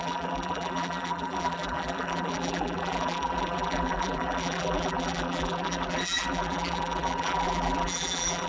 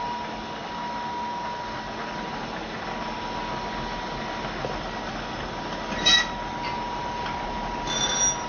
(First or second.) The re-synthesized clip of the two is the first